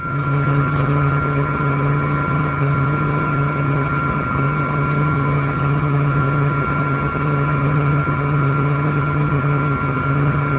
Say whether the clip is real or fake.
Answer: fake